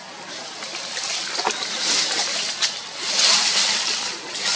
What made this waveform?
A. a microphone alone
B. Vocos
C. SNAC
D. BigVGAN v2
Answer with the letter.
A